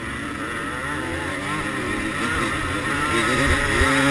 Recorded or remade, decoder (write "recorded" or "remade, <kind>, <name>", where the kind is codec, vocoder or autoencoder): recorded